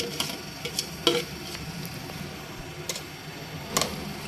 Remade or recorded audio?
recorded